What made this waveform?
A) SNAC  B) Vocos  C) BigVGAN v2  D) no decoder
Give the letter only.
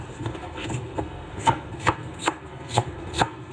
A